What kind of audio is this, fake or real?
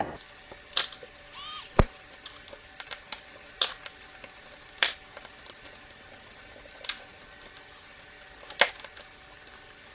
real